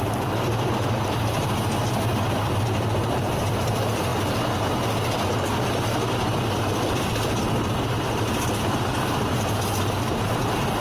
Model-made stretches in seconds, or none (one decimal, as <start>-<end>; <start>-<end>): 0.0-4.1; 8.2-10.8